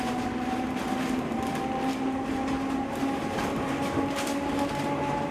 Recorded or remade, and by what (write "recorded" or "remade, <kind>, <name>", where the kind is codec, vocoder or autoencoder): recorded